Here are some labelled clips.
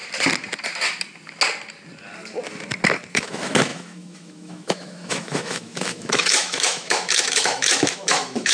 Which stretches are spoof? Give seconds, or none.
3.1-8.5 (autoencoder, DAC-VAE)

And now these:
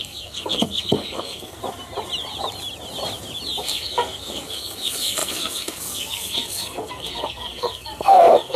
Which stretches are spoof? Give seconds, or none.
0.0-1.6 (codec, SNAC); 3.6-8.6

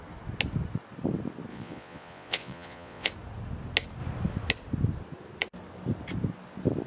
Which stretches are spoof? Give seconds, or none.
1.5-3.1 (vocoder, Vocos)

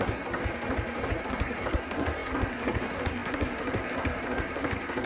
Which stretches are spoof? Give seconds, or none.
0.0-0.4 (codec, SNAC); 1.2-5.1